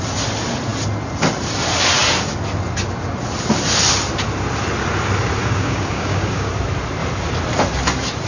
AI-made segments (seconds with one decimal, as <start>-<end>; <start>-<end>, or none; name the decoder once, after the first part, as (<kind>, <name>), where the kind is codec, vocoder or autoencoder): 5.4-6.5 (codec, DAC)

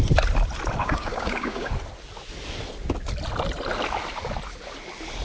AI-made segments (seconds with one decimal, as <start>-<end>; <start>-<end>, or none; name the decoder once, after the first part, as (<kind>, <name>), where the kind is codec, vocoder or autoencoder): 0.8-1.7 (codec, DAC)

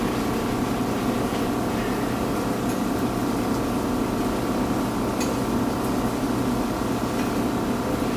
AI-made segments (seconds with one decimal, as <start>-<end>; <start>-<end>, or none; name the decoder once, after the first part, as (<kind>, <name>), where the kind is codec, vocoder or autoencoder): none

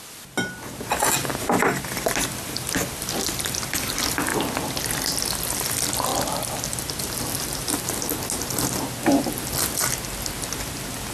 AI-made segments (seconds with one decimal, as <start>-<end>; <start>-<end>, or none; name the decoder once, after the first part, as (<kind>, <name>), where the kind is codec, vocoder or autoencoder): none

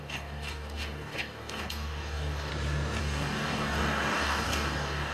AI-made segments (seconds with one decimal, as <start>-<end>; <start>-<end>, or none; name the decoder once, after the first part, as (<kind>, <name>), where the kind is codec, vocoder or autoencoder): 0.0-2.5 (codec, DAC); 3.0-5.1

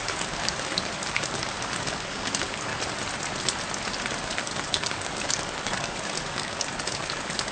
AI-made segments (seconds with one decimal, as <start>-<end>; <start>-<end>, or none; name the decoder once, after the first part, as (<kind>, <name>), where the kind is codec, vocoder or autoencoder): 0.0-2.7 (codec, DAC); 4.2-7.5

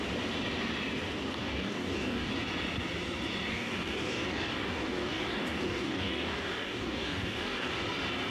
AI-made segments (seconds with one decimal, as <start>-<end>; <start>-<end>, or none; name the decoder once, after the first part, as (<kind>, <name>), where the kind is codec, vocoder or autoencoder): 1.4-2.3 (codec, DAC); 3.5-7.8